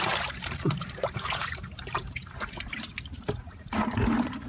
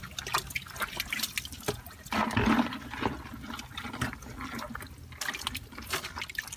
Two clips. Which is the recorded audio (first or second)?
second